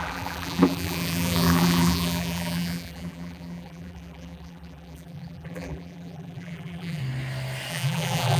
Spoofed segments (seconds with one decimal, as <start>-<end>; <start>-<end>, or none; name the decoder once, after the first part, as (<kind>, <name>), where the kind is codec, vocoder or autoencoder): 0.0-7.0 (vocoder, BigVGAN v2); 7.7-8.4